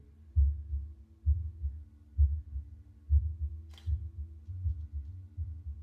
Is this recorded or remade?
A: recorded